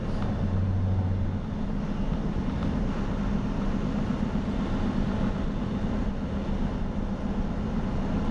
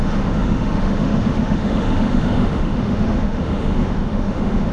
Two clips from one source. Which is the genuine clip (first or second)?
first